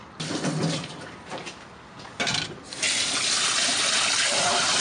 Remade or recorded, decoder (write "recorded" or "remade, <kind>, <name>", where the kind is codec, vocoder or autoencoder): remade, vocoder, BigVGAN v2